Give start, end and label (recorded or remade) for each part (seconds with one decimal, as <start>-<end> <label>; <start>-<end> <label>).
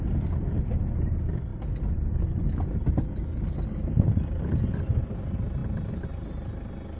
0.0-7.0 recorded